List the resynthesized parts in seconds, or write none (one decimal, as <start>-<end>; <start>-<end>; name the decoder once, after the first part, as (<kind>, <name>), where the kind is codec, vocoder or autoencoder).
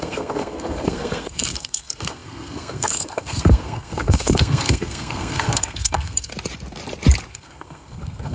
0.0-6.3 (codec, SNAC); 7.3-8.3